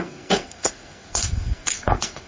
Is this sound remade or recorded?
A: remade